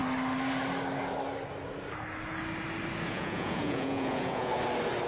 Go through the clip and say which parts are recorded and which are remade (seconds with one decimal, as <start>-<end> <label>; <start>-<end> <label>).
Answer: 0.0-3.1 recorded; 3.1-4.5 remade; 4.5-5.1 recorded